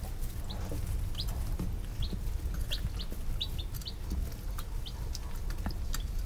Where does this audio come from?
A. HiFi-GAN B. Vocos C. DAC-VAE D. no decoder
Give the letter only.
D